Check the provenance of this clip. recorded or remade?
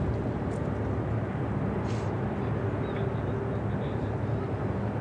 recorded